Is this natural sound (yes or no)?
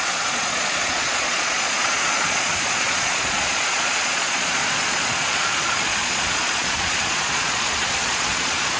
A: no